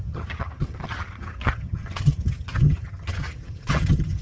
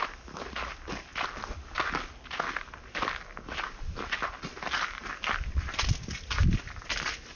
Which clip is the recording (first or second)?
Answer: second